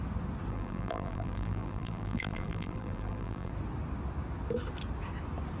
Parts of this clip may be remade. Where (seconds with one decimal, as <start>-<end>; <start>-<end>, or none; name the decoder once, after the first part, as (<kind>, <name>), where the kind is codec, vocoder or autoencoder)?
0.5-3.5 (vocoder, BigVGAN v2)